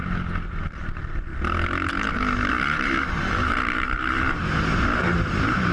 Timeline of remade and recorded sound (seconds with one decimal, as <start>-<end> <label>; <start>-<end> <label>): 0.0-0.5 recorded; 0.5-1.3 remade; 1.3-2.5 recorded; 2.5-5.7 remade